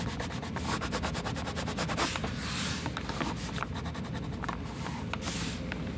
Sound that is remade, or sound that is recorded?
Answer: recorded